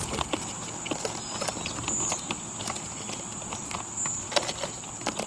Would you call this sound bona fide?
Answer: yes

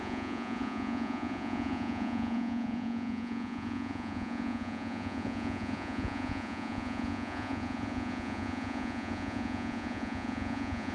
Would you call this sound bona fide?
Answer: no